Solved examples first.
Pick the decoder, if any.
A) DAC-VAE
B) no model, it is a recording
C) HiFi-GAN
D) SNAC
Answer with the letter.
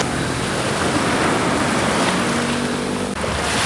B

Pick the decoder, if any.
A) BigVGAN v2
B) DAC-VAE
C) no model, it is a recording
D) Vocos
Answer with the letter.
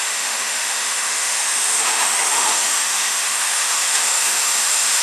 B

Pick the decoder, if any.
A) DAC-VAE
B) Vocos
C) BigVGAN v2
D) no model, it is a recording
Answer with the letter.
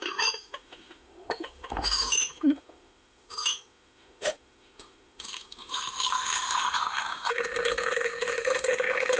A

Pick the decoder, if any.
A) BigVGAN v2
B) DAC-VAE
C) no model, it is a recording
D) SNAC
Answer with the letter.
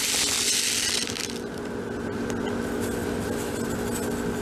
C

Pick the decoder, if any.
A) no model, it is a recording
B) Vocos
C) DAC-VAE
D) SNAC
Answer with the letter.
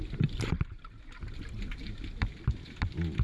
A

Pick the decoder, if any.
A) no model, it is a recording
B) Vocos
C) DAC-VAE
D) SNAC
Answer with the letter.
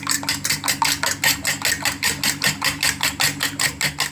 A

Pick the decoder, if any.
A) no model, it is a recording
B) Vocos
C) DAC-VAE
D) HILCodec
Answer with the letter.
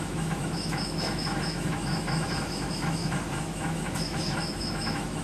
C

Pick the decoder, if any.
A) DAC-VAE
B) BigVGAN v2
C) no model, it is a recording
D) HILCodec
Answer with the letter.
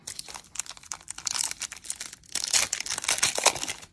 C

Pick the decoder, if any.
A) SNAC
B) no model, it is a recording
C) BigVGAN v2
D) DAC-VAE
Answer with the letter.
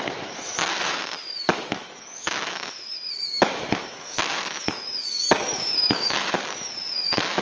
D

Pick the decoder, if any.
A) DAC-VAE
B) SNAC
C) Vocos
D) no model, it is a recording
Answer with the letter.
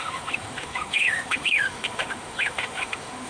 A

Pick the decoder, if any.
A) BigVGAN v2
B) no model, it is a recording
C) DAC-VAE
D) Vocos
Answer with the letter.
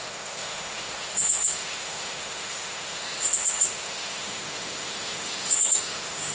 C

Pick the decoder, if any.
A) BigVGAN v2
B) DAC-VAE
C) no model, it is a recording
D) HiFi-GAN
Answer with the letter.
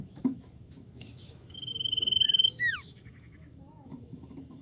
B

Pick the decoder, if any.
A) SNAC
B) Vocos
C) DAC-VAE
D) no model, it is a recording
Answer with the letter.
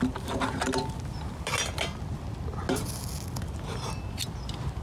D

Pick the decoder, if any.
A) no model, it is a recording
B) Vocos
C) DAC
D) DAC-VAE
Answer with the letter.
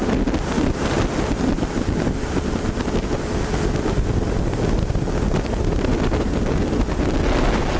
A